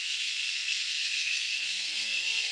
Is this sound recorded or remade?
remade